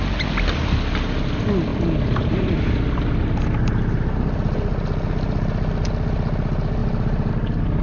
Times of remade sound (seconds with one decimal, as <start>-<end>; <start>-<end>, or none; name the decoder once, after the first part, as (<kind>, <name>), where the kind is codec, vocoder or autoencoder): 1.7-2.6 (vocoder, BigVGAN v2); 6.8-7.3